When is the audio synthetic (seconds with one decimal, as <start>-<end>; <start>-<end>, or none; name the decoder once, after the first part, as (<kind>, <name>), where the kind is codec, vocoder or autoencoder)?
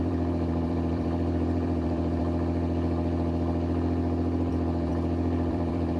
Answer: 0.0-2.2 (vocoder, BigVGAN v2); 4.5-4.9; 5.5-6.0